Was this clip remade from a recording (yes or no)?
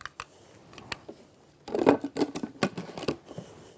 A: no